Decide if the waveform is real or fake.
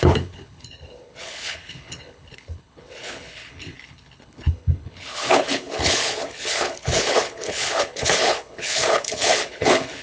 fake